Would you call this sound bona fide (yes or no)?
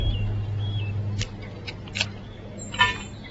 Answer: yes